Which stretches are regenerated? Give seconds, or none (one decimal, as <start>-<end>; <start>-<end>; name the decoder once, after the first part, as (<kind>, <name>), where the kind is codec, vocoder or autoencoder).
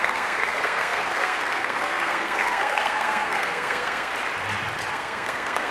0.0-4.1 (codec, SNAC); 4.9-5.7